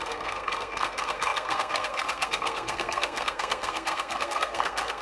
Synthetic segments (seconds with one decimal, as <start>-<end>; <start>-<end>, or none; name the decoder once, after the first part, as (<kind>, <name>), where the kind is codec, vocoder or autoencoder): 0.0-5.0 (codec, SNAC)